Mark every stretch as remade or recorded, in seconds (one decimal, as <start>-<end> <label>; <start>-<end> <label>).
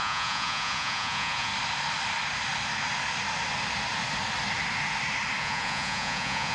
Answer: 0.0-1.5 remade; 1.5-5.4 recorded; 5.4-6.5 remade